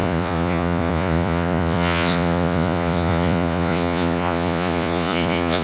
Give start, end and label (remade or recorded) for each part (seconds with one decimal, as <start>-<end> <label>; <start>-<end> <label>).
0.0-5.6 remade